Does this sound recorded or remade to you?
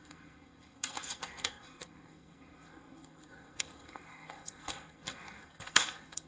remade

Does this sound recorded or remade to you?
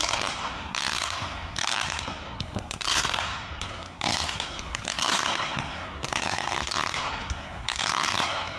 remade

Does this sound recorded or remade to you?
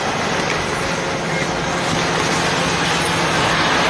recorded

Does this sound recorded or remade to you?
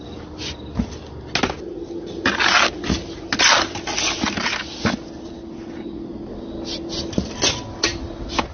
recorded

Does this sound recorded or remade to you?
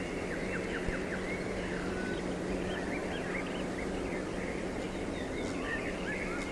recorded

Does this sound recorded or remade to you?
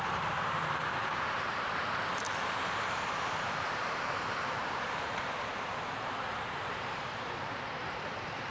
remade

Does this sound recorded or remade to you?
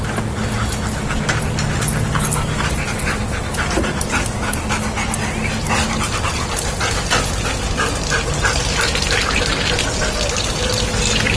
recorded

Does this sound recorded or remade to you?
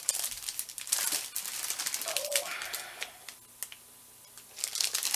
recorded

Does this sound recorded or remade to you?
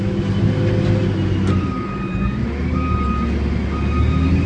recorded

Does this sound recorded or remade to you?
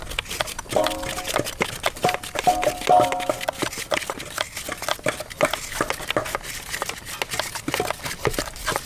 recorded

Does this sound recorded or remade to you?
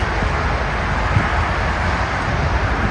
recorded